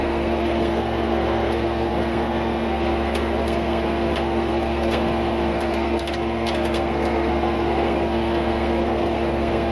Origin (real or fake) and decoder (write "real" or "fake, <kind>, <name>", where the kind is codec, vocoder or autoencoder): fake, codec, SNAC